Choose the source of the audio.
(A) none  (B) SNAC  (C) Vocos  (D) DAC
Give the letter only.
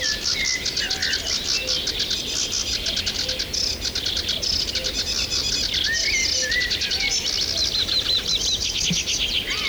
A